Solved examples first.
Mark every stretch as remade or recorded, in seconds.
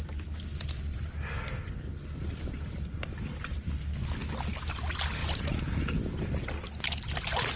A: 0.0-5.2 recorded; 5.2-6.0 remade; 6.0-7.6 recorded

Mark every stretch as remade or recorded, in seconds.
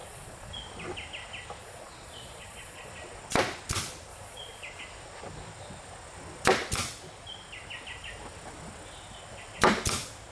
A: 0.0-0.5 remade; 0.5-1.6 recorded; 1.6-2.9 remade; 2.9-4.1 recorded; 4.1-4.8 remade; 4.8-10.3 recorded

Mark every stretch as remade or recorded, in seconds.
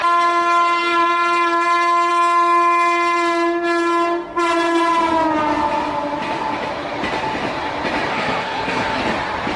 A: 0.0-8.1 recorded; 8.1-9.0 remade; 9.0-9.6 recorded